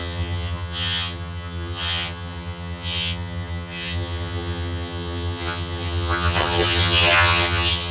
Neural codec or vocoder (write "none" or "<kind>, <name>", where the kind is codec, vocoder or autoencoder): vocoder, HiFi-GAN